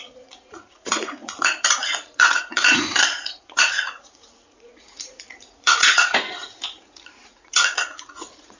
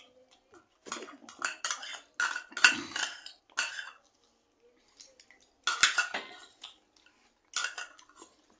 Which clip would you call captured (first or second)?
second